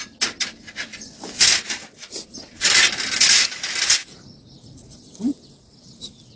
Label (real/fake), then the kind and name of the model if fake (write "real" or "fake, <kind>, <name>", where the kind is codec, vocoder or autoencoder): real